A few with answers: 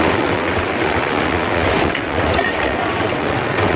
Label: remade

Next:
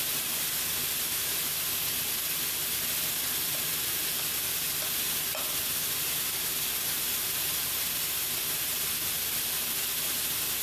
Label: recorded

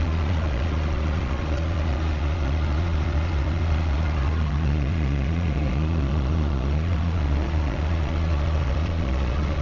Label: remade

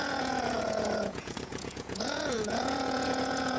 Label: remade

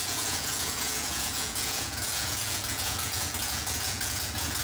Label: remade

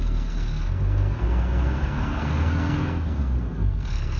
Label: remade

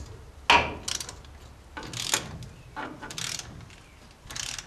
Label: recorded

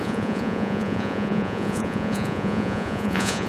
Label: remade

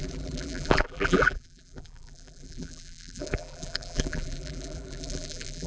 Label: remade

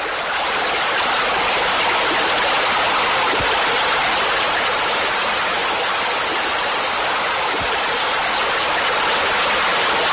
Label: recorded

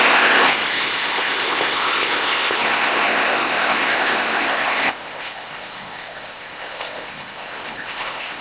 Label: remade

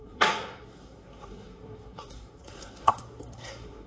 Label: remade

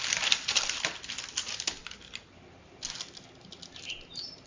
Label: recorded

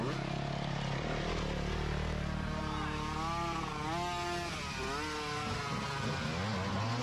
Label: recorded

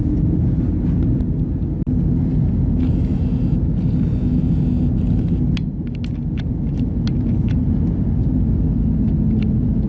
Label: recorded